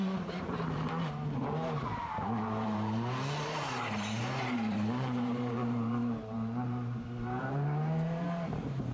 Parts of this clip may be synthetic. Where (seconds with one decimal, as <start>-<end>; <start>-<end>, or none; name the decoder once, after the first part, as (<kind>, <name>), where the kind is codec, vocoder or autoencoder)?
0.0-8.9 (vocoder, BigVGAN v2)